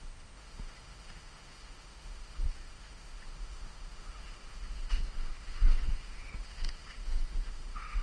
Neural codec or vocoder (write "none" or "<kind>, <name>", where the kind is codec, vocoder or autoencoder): autoencoder, DAC-VAE